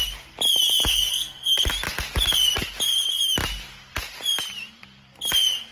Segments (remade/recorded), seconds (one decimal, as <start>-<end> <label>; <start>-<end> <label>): 0.0-1.1 recorded; 1.1-1.7 remade; 1.7-5.7 recorded

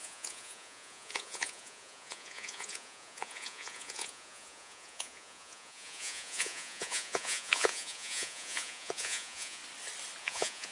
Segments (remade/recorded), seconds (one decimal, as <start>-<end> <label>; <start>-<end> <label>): 0.0-9.6 remade; 9.6-10.2 recorded; 10.2-10.7 remade